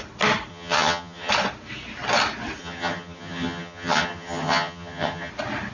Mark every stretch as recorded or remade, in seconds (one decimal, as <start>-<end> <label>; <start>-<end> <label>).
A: 0.0-0.5 recorded; 0.5-1.3 remade; 1.3-2.6 recorded; 2.6-5.3 remade; 5.3-5.7 recorded